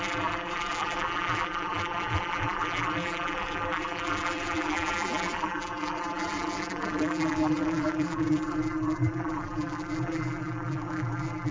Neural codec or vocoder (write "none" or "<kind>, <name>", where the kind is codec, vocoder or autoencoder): vocoder, BigVGAN v2